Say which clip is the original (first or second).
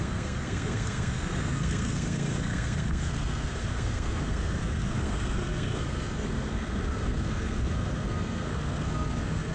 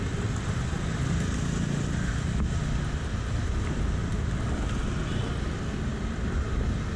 second